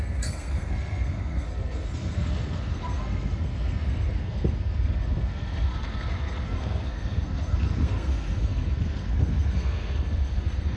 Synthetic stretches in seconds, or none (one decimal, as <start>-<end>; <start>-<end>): 0.0-10.8